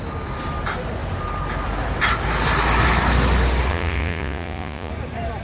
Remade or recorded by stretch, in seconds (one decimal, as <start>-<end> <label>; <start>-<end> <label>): 0.0-3.7 recorded; 3.7-4.9 remade; 4.9-5.4 recorded